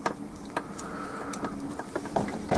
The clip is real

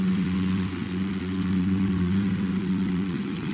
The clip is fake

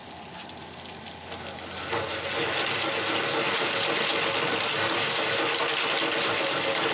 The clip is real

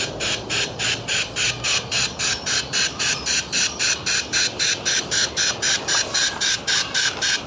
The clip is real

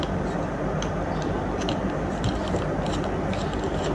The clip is fake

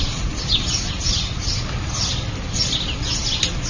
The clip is real